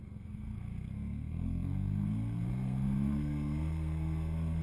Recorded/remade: remade